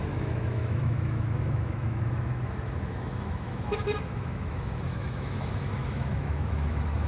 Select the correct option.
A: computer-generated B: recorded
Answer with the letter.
A